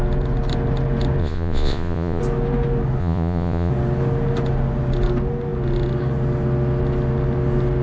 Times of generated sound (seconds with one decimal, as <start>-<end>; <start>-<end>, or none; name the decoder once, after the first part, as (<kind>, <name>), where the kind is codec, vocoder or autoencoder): 1.2-2.2 (vocoder, Vocos); 3.0-3.7